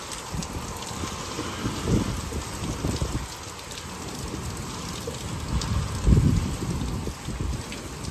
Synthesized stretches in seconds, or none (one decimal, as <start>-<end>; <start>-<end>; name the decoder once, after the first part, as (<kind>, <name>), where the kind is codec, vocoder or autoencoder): none